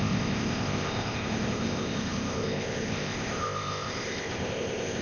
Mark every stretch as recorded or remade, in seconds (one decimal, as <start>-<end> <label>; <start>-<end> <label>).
0.0-5.0 remade